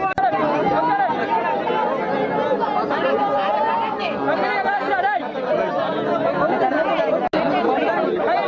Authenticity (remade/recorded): recorded